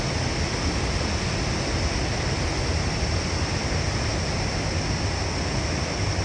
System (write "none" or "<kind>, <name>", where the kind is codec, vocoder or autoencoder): none